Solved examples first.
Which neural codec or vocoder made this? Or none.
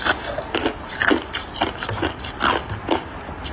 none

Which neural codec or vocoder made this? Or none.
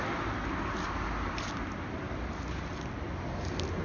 none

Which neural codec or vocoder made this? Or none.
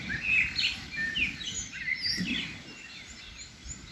none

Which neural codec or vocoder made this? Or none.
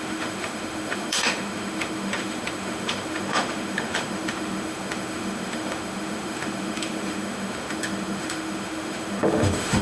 autoencoder, DAC-VAE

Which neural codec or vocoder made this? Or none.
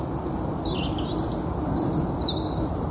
none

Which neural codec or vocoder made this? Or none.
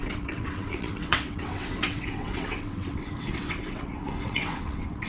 vocoder, WaveNeXt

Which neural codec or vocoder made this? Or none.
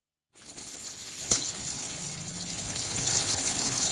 codec, HILCodec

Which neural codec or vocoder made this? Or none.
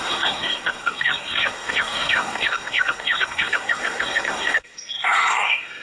codec, SNAC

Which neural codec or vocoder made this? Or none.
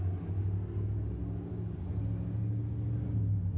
none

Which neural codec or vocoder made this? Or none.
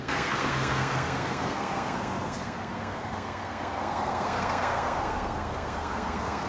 codec, SNAC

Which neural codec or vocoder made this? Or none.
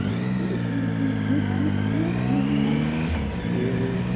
none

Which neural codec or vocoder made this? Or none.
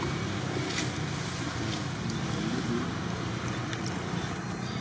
none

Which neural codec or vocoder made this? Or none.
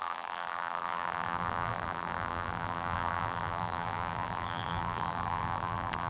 vocoder, BigVGAN v2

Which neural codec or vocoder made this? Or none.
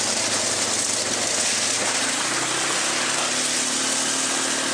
none